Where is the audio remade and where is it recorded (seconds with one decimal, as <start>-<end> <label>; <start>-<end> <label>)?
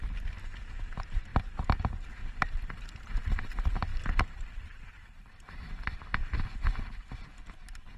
0.0-2.2 recorded; 2.2-2.9 remade; 2.9-3.9 recorded; 3.9-7.4 remade; 7.4-8.0 recorded